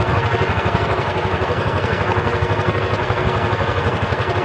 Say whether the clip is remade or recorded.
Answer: remade